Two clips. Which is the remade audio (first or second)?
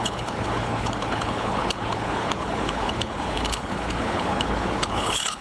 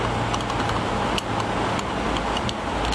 first